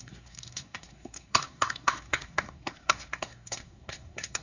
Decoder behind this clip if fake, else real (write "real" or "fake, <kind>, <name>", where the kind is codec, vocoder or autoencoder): fake, codec, SNAC